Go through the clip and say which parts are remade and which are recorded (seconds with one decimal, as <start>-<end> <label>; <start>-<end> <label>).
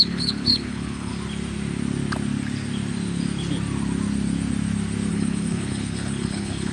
0.0-1.1 remade; 1.1-5.1 recorded; 5.1-6.7 remade